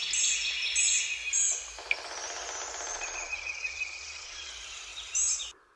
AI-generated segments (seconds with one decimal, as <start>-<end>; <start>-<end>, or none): 2.9-4.5